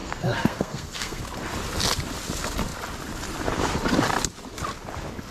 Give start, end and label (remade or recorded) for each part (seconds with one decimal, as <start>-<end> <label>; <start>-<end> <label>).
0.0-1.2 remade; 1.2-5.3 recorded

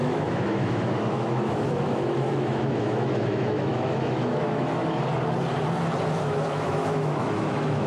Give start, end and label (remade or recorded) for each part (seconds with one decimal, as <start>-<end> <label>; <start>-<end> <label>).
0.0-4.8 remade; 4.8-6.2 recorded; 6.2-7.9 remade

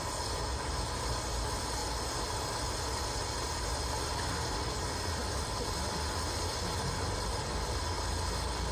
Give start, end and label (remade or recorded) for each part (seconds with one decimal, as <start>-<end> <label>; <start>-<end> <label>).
0.0-8.7 recorded

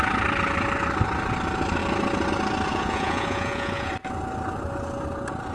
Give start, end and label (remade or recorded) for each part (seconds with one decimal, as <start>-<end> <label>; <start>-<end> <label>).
0.0-2.7 recorded; 2.7-3.9 remade; 3.9-5.5 recorded